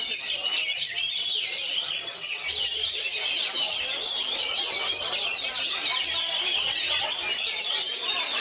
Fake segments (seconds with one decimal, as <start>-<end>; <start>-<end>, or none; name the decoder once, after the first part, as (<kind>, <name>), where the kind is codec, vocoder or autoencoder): none